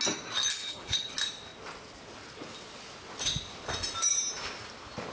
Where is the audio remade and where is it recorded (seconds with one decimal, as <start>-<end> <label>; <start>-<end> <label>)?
0.0-0.6 recorded; 0.6-1.1 remade; 1.1-5.1 recorded